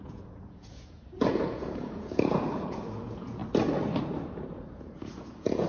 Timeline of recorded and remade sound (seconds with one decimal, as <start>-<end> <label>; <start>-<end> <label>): 0.0-3.4 remade; 3.4-4.3 recorded; 4.3-5.7 remade